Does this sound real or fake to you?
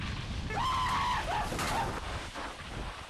real